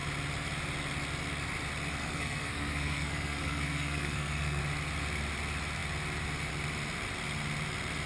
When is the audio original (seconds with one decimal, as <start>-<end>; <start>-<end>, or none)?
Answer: 0.0-2.0; 4.6-8.1